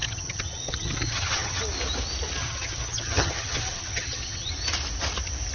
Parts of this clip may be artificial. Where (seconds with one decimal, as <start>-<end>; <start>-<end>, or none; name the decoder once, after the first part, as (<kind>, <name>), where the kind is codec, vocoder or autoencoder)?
0.0-1.6 (vocoder, HiFi-GAN); 2.4-4.5